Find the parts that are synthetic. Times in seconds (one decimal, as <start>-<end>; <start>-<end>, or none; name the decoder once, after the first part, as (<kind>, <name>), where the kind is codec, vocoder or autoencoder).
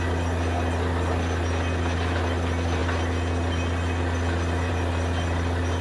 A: none